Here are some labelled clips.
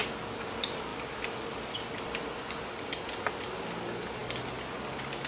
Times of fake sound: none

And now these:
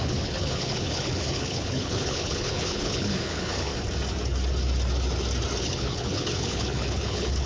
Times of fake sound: 0.0-3.7 (codec, HILCodec); 5.6-7.5

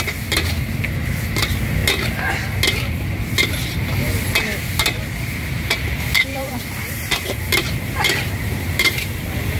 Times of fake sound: 6.3-9.6 (vocoder, BigVGAN v2)